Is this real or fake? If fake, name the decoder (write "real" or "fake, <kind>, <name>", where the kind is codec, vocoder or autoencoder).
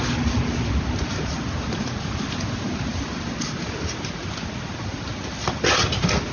real